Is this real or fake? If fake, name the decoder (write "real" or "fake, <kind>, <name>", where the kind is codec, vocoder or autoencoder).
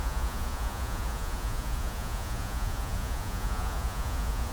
fake, vocoder, Vocos